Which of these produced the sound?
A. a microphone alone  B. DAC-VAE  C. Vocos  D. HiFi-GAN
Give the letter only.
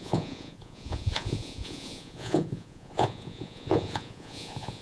C